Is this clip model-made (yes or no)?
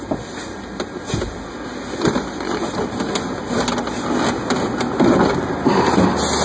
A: no